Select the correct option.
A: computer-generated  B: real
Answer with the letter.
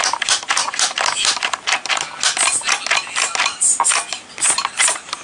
B